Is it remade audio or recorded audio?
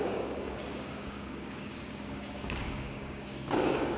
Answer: remade